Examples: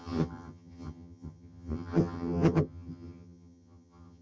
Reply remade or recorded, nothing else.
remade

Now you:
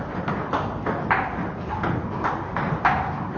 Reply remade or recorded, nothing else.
recorded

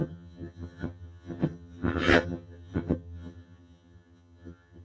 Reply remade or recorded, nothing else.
remade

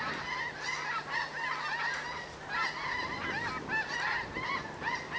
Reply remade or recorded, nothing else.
recorded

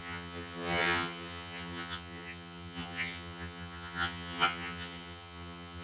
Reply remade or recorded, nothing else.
remade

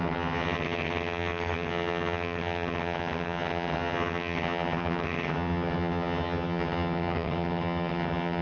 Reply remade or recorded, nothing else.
remade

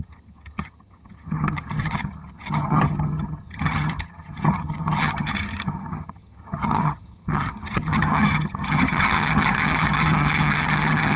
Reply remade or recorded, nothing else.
remade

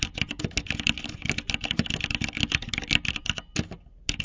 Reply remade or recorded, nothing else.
recorded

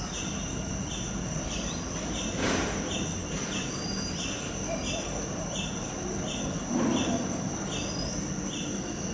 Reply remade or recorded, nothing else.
recorded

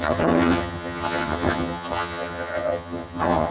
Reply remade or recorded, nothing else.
remade